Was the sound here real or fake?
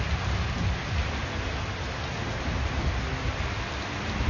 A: real